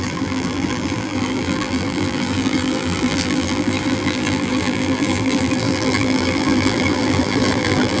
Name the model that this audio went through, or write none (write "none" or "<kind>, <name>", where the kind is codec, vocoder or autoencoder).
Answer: vocoder, BigVGAN v2